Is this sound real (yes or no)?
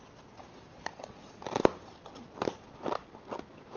yes